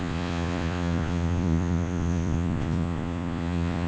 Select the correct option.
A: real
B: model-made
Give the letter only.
B